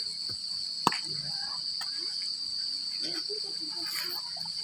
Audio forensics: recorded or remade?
recorded